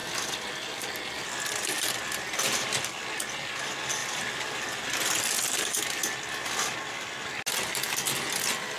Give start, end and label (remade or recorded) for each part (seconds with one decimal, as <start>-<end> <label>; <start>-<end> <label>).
0.0-2.0 remade; 2.0-4.0 recorded; 4.0-4.8 remade; 4.8-8.8 recorded